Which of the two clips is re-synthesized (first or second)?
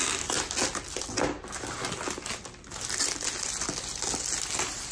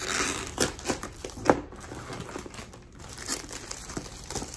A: second